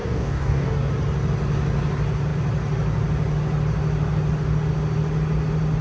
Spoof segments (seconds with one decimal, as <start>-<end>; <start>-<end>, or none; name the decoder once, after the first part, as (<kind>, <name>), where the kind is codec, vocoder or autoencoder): 0.0-0.9 (codec, DAC)